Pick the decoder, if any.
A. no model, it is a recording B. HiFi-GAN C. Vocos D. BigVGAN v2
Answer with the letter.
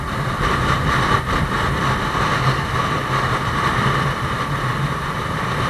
D